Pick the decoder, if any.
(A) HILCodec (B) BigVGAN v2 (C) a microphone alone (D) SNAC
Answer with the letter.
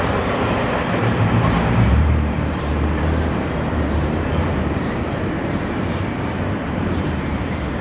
B